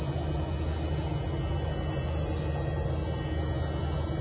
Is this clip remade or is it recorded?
recorded